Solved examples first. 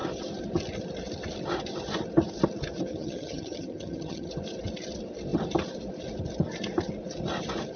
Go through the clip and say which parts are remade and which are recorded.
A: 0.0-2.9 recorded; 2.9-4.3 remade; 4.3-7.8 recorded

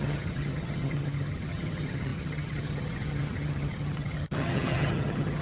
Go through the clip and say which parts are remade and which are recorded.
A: 0.0-5.4 remade

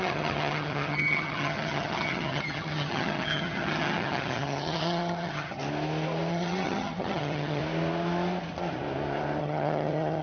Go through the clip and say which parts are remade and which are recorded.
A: 0.0-5.6 remade; 5.6-6.3 recorded; 6.3-7.6 remade; 7.6-9.4 recorded; 9.4-10.2 remade

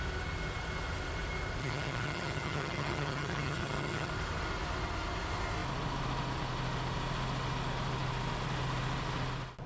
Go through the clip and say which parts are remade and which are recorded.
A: 0.0-1.6 recorded; 1.6-4.1 remade; 4.1-9.7 recorded